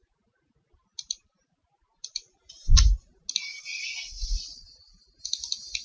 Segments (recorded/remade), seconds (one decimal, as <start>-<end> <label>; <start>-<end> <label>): 0.0-5.8 recorded